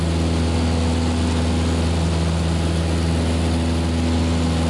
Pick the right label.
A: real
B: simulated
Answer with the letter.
A